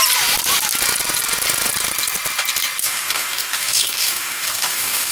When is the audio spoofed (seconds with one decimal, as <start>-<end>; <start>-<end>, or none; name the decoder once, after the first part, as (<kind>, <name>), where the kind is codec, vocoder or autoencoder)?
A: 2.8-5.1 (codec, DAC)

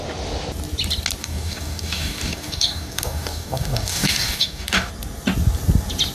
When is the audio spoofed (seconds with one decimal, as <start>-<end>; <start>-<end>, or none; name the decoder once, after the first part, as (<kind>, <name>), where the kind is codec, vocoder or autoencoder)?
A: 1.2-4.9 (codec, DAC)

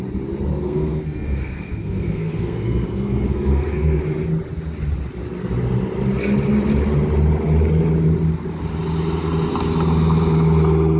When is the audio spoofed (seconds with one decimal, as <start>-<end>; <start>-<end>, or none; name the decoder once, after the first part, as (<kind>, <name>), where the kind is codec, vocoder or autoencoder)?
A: 0.5-4.0 (codec, SNAC)

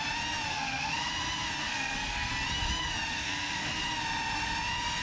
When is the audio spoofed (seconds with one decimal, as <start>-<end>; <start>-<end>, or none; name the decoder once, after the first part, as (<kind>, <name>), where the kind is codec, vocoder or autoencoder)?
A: 0.5-1.1 (codec, SNAC); 1.6-2.3; 3.1-3.8

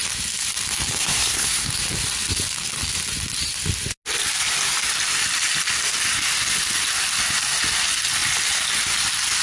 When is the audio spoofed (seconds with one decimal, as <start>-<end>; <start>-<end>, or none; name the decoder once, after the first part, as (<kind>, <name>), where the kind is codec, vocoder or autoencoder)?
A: 1.0-1.7 (codec, SNAC)

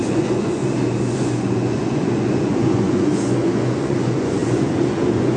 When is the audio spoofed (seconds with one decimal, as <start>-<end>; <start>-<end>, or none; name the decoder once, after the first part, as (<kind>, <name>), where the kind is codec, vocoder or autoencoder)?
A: 0.0-0.6 (vocoder, Vocos); 1.1-5.4

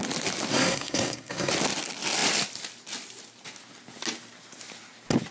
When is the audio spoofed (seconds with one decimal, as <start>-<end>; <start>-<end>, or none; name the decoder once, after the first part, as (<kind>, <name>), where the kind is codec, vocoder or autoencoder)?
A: 0.5-1.5 (codec, SNAC)